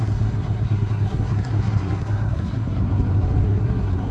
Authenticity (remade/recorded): remade